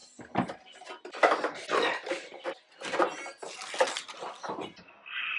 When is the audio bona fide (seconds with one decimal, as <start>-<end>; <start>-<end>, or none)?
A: 0.0-5.4